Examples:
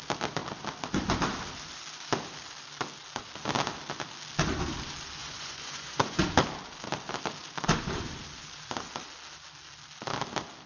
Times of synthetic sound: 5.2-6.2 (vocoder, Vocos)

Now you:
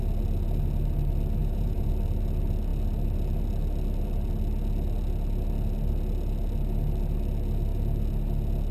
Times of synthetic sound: 1.4-1.9 (vocoder, Vocos)

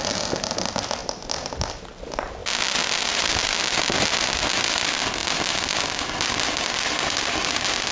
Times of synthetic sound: none

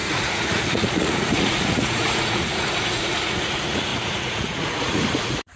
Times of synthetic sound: 0.0-5.6 (vocoder, Vocos)

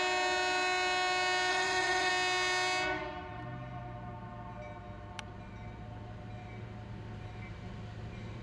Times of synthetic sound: 1.5-2.1 (vocoder, Vocos)